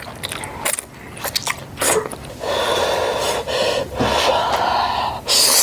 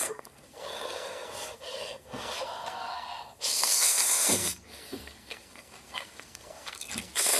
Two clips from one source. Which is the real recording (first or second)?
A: first